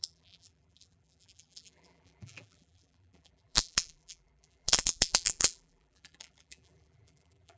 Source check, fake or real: fake